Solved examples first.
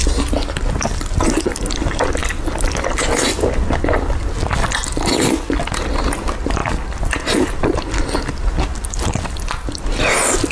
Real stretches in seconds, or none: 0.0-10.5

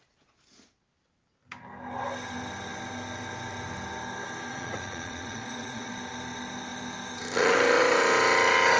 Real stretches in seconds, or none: 0.0-4.5; 5.9-8.8